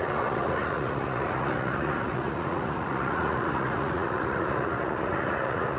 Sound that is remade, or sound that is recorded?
remade